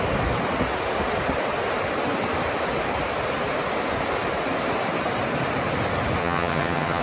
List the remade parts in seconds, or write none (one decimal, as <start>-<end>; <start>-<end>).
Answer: 6.2-7.0